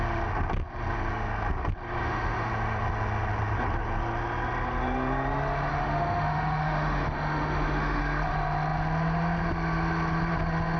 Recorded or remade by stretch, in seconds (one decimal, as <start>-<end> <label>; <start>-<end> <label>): 0.0-2.0 recorded; 2.0-2.5 remade; 2.5-5.7 recorded; 5.7-8.0 remade; 8.0-10.8 recorded